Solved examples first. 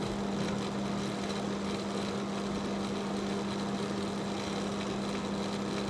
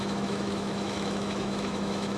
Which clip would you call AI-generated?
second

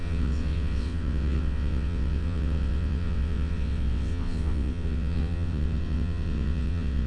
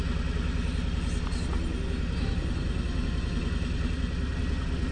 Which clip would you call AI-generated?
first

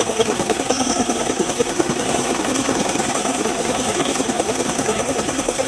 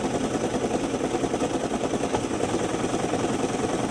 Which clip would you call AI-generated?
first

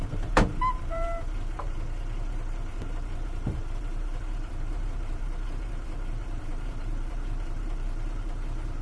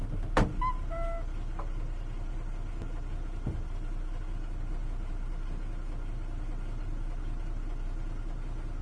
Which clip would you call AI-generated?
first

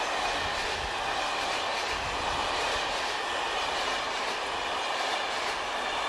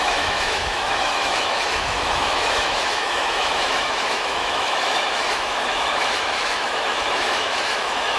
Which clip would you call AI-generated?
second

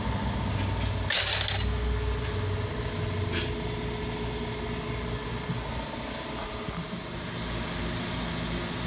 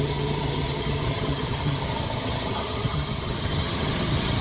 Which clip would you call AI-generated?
second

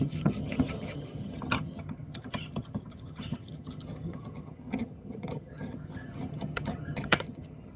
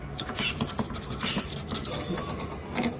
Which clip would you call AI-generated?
first